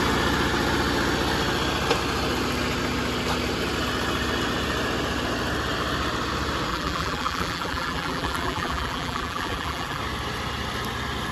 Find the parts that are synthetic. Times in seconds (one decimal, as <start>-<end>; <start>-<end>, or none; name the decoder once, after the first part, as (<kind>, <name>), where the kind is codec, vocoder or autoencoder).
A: 6.7-10.0 (vocoder, BigVGAN v2)